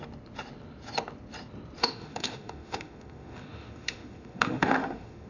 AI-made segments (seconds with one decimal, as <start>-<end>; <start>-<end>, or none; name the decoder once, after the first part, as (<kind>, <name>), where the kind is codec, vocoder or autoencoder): 1.8-5.3 (autoencoder, DAC-VAE)